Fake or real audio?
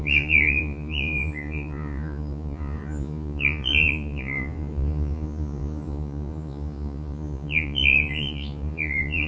fake